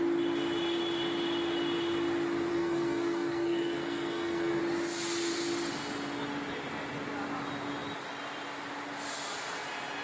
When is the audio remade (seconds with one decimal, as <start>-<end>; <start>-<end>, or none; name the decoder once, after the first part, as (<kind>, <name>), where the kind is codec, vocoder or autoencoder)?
2.5-4.6 (codec, SNAC)